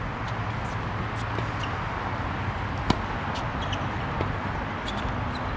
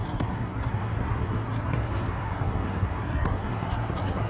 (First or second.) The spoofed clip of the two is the second